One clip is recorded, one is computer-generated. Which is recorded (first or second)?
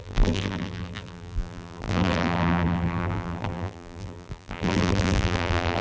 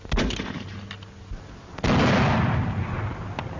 second